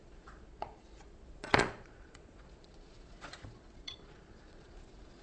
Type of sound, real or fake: fake